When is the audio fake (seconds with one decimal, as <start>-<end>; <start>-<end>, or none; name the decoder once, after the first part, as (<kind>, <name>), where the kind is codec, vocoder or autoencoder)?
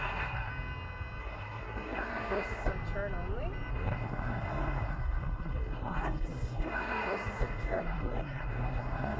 0.0-0.5 (codec, SNAC); 1.2-2.7; 3.7-9.2